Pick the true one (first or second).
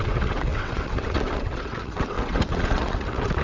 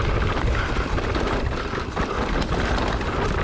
second